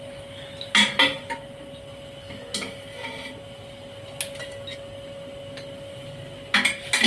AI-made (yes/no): no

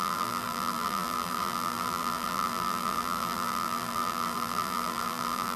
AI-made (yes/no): yes